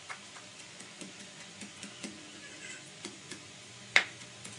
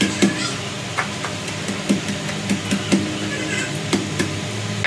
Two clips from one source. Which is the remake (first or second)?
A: first